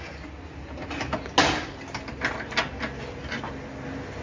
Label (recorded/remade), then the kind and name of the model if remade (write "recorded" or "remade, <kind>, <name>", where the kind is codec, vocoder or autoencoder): recorded